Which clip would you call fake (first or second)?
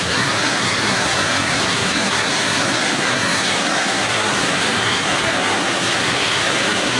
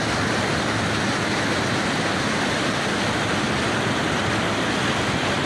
first